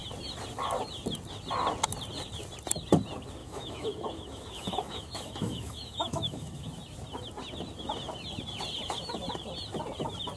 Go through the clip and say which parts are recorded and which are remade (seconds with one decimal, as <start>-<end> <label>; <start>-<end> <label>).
0.0-3.4 recorded; 3.4-6.7 remade; 6.7-10.4 recorded